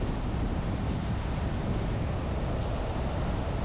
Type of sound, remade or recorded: recorded